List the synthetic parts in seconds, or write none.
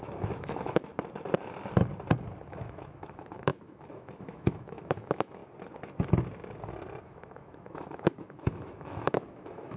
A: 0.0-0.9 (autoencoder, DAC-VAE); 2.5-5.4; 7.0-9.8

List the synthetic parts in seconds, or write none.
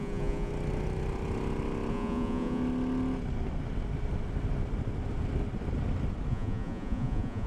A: 0.0-0.5 (vocoder, Vocos); 1.9-2.6; 6.3-7.5